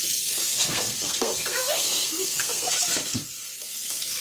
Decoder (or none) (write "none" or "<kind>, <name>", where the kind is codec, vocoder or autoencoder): codec, SNAC